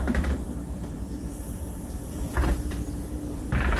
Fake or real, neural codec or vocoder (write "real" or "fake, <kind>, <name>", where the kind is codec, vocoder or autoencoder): fake, vocoder, BigVGAN v2